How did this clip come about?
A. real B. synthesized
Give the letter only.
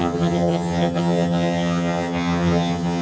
B